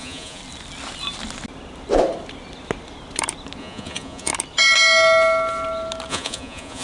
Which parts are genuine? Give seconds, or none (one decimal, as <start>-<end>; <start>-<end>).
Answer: 0.4-3.6; 4.3-6.1

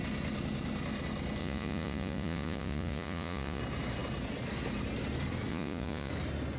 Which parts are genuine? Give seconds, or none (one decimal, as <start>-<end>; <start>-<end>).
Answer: 0.0-1.4; 3.6-5.5; 6.1-6.6

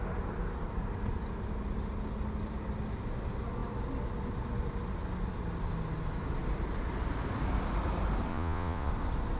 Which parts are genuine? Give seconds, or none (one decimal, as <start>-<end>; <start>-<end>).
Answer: 0.0-8.3; 8.9-9.4